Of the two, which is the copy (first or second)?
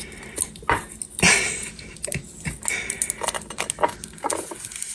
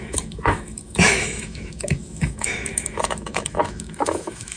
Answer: second